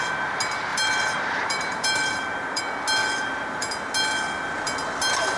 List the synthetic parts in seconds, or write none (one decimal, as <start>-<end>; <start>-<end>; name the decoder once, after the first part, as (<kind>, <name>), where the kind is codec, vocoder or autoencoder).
0.7-2.6 (vocoder, BigVGAN v2); 3.0-3.7

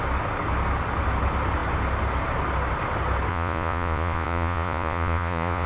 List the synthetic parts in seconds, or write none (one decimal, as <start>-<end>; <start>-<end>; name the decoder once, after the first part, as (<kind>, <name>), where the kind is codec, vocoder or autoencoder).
3.3-5.7 (vocoder, Vocos)

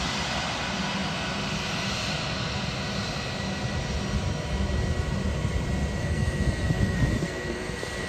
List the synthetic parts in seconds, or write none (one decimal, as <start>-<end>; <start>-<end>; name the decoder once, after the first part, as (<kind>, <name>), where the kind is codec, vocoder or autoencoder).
6.0-8.1 (codec, SNAC)

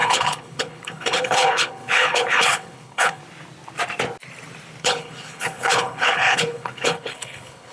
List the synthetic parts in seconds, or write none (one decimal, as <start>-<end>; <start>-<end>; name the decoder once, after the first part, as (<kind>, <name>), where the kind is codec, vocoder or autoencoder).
0.0-3.2 (codec, HILCodec); 4.8-7.7

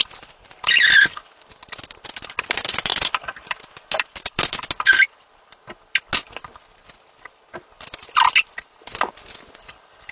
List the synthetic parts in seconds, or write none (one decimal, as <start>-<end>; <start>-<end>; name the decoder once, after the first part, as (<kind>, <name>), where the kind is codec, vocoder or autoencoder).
none

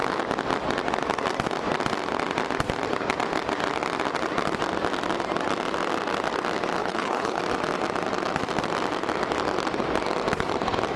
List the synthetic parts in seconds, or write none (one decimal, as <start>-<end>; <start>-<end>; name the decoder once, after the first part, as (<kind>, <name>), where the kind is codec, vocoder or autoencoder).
6.8-7.4 (codec, HILCodec)